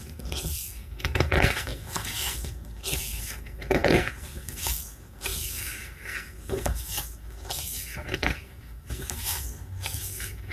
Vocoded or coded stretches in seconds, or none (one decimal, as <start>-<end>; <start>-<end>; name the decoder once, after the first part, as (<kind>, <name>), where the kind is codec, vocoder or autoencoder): 0.0-10.5 (codec, SNAC)